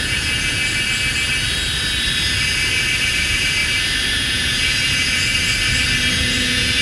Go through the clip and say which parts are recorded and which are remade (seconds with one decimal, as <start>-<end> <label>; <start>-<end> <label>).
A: 0.0-0.6 remade; 0.6-3.0 recorded; 3.0-3.6 remade; 3.6-4.1 recorded; 4.1-5.3 remade; 5.3-6.1 recorded; 6.1-6.8 remade